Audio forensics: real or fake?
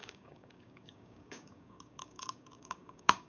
fake